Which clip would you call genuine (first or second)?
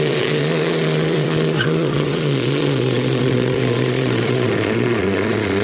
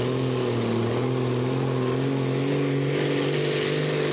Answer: second